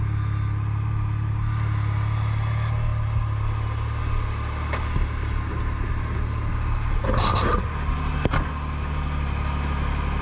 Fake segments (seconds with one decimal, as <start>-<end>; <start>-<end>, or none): none